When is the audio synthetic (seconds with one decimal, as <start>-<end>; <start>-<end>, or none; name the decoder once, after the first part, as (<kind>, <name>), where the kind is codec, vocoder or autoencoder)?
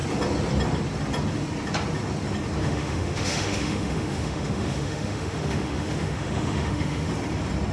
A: 2.6-7.1 (autoencoder, DAC-VAE)